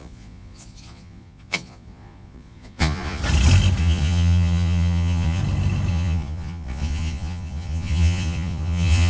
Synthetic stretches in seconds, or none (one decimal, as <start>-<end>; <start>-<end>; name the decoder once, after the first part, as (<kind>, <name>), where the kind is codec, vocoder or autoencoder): 0.0-3.2 (vocoder, Vocos); 3.8-5.4; 5.9-9.1